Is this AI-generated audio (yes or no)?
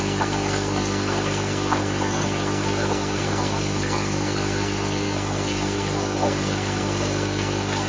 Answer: yes